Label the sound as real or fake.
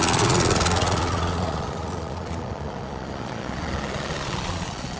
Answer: fake